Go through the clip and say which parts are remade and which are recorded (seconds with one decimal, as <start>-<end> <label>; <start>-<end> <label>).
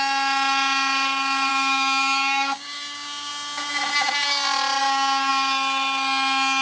0.0-1.5 recorded; 1.5-3.3 remade; 3.3-4.8 recorded; 4.8-5.3 remade; 5.3-6.6 recorded